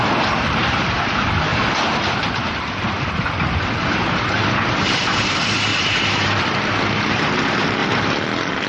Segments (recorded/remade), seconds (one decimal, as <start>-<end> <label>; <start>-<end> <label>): 0.0-5.7 remade; 5.7-6.4 recorded; 6.4-7.8 remade; 7.8-8.7 recorded